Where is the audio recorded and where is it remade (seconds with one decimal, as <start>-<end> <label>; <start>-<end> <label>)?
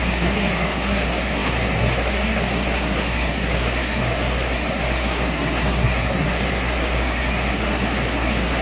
0.0-8.6 remade